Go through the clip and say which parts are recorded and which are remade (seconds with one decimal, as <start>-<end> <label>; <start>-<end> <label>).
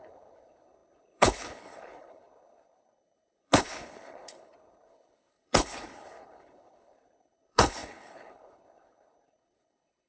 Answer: 0.0-10.1 remade